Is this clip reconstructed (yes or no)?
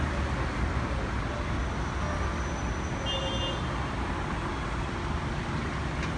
no